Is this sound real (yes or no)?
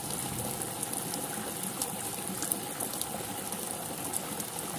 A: yes